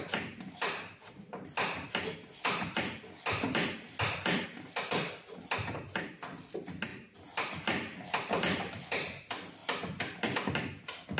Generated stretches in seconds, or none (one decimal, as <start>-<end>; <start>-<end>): none